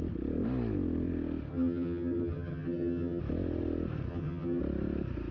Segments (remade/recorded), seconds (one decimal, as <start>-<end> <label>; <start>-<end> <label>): 0.0-1.5 recorded; 1.5-3.2 remade; 3.2-4.1 recorded; 4.1-4.6 remade; 4.6-5.3 recorded